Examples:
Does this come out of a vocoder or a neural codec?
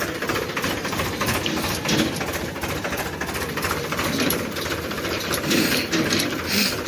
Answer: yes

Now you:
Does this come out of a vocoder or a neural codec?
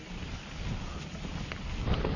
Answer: no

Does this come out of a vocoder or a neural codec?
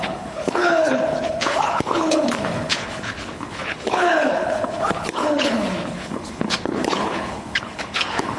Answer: yes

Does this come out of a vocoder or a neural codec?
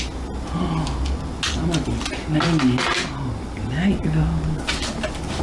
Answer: no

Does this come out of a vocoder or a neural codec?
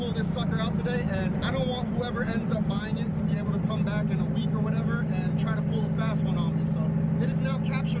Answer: no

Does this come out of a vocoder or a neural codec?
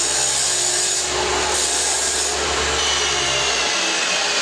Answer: no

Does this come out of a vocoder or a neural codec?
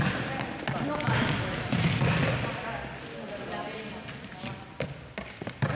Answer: no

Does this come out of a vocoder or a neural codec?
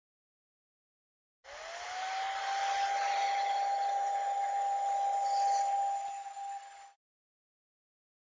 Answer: no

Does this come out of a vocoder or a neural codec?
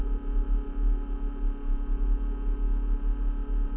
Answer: no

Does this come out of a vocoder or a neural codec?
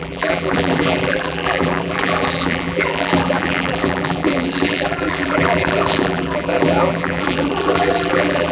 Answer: yes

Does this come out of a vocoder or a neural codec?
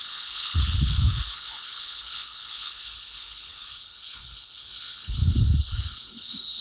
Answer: yes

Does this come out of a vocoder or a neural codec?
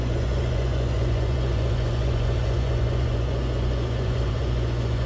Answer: yes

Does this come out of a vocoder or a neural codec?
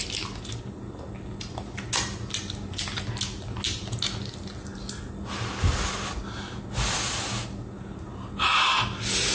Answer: no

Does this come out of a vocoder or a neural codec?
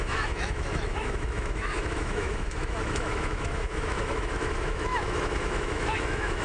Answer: yes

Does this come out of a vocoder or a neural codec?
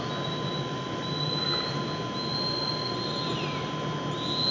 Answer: no